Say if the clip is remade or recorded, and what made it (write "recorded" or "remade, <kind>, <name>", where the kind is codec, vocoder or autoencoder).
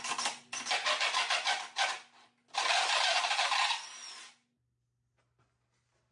recorded